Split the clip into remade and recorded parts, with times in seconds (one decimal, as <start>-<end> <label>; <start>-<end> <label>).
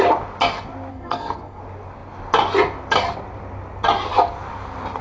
0.0-0.9 recorded; 0.9-1.6 remade; 1.6-5.0 recorded